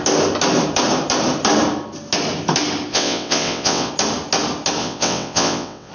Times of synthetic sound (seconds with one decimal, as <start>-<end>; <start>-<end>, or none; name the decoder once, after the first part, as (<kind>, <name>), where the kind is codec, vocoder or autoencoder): 2.9-3.9 (vocoder, WaveNeXt); 4.8-5.9